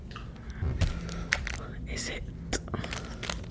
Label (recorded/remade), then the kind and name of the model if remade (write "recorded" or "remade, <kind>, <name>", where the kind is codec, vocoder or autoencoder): recorded